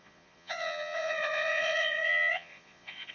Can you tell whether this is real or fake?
fake